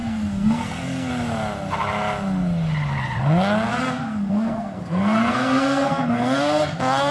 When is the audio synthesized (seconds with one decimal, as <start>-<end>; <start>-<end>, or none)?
0.0-1.1; 3.7-7.1